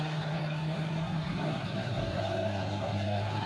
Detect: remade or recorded remade